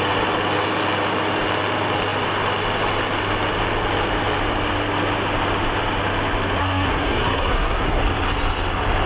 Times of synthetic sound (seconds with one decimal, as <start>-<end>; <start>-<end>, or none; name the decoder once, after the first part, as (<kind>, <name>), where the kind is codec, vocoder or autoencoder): 6.6-8.0 (codec, SNAC)

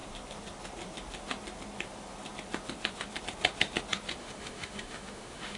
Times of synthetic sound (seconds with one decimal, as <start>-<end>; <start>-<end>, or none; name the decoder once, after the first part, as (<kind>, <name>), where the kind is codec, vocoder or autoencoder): 4.2-5.6 (autoencoder, DAC-VAE)

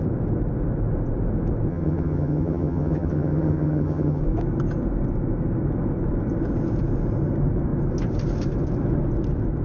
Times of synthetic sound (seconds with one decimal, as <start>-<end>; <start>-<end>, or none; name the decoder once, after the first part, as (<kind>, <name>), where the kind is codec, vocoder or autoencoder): 1.7-4.2 (vocoder, HiFi-GAN)

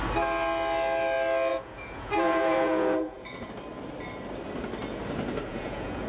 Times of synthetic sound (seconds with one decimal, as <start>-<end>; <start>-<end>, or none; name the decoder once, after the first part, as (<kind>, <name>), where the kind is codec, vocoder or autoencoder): 1.5-3.5 (vocoder, Vocos); 5.5-6.1

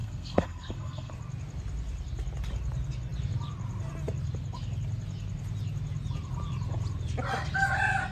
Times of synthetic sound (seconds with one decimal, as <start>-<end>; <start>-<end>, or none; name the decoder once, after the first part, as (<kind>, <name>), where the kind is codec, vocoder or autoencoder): 0.0-1.1 (codec, SNAC)